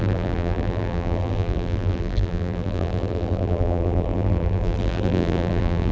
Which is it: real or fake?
fake